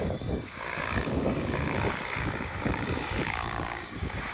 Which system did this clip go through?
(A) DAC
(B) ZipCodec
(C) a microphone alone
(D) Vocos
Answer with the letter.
A